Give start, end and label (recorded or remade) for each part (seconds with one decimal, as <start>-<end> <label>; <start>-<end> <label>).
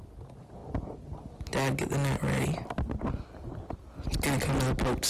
0.0-5.1 recorded